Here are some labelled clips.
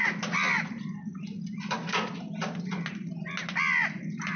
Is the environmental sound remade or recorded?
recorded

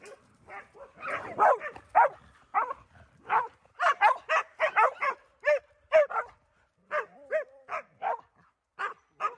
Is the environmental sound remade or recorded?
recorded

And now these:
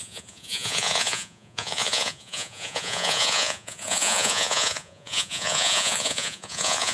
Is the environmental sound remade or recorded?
remade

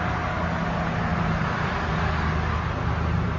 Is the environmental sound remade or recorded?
recorded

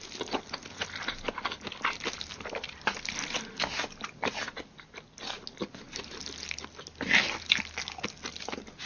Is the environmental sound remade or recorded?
recorded